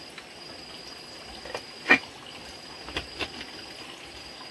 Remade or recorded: recorded